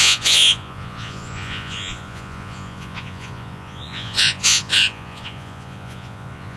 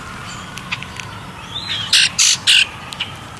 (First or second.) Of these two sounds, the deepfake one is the first